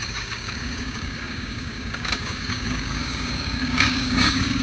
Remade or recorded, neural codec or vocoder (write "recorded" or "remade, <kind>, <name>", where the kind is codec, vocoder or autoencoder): remade, codec, DAC